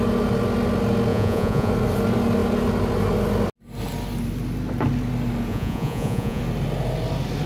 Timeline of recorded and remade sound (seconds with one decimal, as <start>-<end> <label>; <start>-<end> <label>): 0.0-1.1 recorded; 1.1-1.7 remade; 1.7-5.5 recorded; 5.5-6.4 remade; 6.4-7.5 recorded

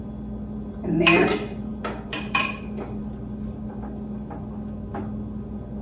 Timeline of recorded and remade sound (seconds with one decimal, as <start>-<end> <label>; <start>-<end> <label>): 0.0-5.8 recorded

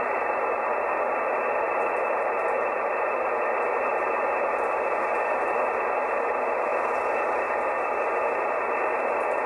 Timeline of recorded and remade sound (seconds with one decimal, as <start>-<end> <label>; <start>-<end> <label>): 0.0-9.5 recorded